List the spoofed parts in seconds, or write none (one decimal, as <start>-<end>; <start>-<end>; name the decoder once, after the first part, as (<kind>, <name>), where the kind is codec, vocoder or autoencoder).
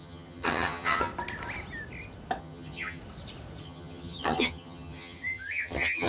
0.0-1.1 (vocoder, HiFi-GAN); 2.4-3.0; 3.6-6.1